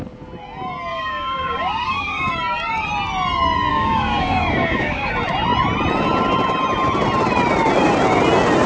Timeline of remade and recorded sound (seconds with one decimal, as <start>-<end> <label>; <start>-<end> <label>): 0.0-0.9 recorded; 0.9-2.3 remade; 2.3-3.7 recorded; 3.7-5.1 remade; 5.1-8.7 recorded